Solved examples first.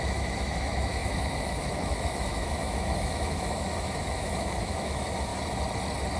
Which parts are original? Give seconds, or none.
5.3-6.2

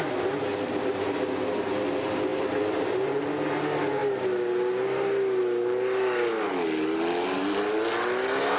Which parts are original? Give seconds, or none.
0.0-2.3; 3.2-8.6

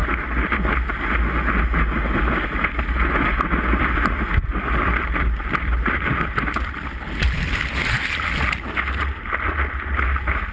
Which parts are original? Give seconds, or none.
0.0-3.3; 7.8-10.5

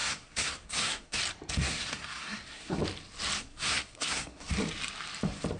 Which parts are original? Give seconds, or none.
1.2-1.6; 2.8-3.4; 4.5-5.6

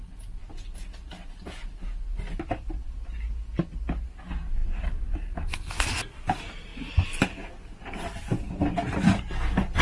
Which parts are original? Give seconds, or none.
0.0-4.6; 5.4-9.8

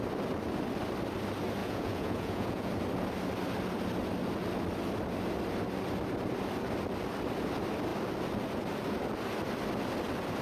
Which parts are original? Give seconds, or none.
0.0-1.6; 2.7-10.4

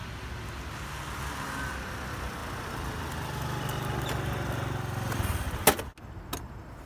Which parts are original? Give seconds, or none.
0.0-6.9

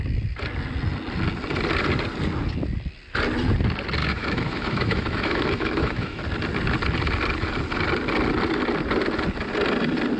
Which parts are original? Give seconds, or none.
0.0-4.0; 6.2-10.2